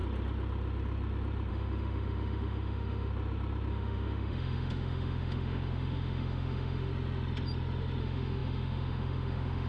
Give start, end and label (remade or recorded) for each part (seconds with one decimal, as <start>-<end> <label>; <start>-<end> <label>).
0.0-1.5 recorded; 1.5-3.1 remade; 3.1-3.7 recorded; 3.7-6.9 remade; 6.9-8.0 recorded; 8.0-9.7 remade